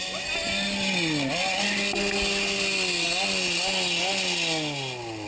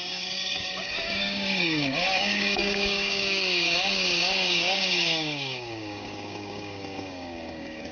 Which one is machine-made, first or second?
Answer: second